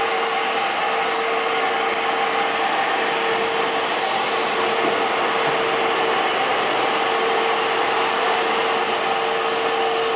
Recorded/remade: recorded